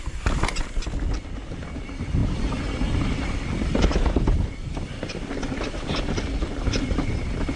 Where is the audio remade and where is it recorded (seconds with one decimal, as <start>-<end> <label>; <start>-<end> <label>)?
0.0-7.6 recorded